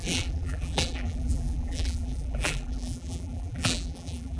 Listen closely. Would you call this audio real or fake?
fake